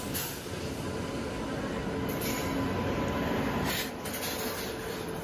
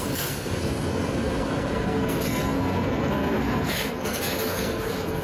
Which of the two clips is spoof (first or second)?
second